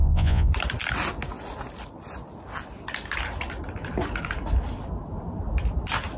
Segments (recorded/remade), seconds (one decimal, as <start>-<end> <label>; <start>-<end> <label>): 0.0-0.5 remade; 0.5-6.2 recorded